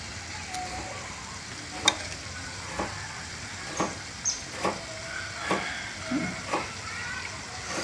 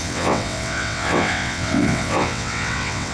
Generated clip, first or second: second